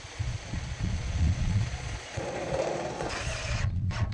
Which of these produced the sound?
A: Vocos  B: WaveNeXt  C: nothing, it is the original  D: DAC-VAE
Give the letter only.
A